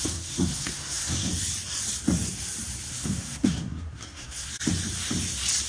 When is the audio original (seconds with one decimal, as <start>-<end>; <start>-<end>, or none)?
1.3-2.9; 4.5-5.7

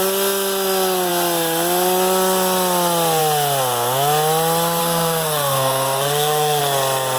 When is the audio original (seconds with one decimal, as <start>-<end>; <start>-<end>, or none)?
0.0-4.8; 6.6-7.2